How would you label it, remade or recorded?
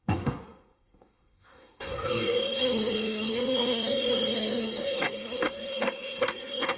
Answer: remade